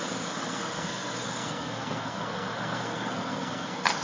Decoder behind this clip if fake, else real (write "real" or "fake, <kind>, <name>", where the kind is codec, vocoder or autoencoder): fake, codec, SNAC